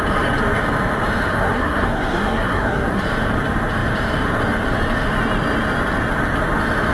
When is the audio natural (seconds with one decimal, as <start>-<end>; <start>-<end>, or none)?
0.0-1.3; 3.0-6.9